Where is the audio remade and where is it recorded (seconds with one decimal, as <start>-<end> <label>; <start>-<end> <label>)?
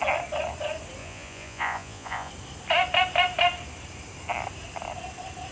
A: 0.0-1.0 recorded; 1.0-2.3 remade; 2.3-5.5 recorded